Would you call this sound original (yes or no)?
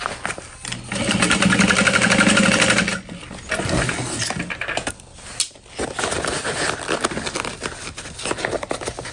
yes